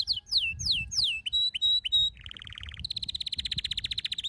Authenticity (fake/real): real